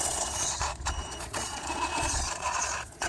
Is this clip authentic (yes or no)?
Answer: no